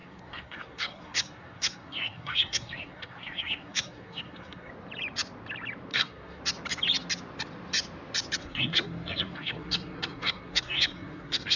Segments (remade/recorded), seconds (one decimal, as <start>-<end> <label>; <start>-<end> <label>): 0.0-4.7 remade; 4.7-5.9 recorded; 5.9-6.4 remade; 6.4-8.4 recorded; 8.4-11.6 remade